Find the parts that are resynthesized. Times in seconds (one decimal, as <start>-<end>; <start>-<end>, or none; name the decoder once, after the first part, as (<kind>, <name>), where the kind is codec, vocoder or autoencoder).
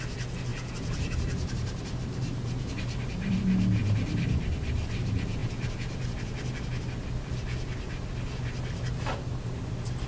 0.5-3.3 (vocoder, BigVGAN v2); 3.8-4.5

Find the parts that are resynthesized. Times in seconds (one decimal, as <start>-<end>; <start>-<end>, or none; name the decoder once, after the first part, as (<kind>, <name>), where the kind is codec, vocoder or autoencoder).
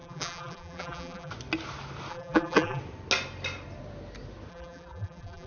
0.0-1.3 (vocoder, BigVGAN v2); 2.1-2.8; 4.5-5.5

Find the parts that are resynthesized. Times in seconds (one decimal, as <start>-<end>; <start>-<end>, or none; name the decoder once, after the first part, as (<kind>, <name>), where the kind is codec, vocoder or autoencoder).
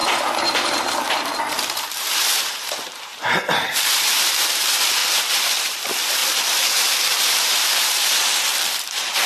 0.0-5.0 (vocoder, BigVGAN v2); 5.6-9.3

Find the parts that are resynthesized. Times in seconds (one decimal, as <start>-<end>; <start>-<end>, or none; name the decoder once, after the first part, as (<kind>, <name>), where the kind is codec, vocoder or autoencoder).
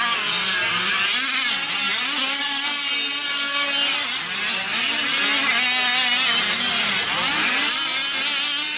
none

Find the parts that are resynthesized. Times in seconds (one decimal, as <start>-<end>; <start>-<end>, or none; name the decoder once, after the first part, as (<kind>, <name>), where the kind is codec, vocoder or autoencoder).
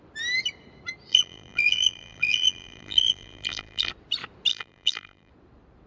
1.1-3.9 (vocoder, BigVGAN v2); 4.5-5.3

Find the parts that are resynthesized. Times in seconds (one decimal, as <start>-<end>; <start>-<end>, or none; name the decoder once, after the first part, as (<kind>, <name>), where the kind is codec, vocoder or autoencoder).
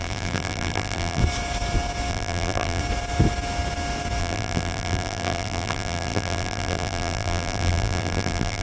0.0-1.2 (vocoder, BigVGAN v2); 2.1-2.8; 4.2-8.6